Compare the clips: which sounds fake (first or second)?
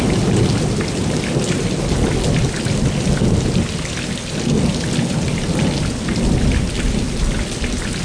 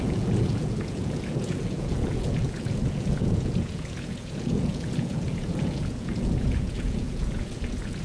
second